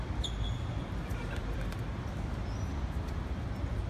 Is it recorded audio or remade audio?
recorded